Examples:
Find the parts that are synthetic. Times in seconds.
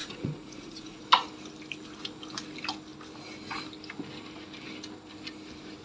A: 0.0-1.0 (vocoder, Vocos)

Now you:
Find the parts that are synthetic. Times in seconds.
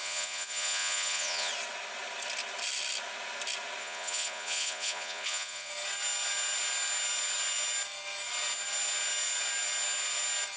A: 0.0-1.5 (vocoder, Vocos); 3.8-5.7